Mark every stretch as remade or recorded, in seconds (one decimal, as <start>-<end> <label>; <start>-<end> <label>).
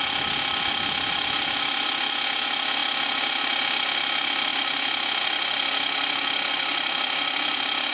0.0-7.9 recorded